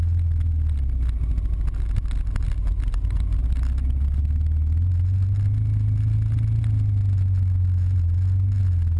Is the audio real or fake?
real